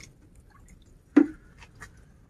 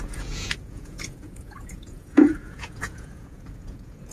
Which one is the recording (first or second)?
first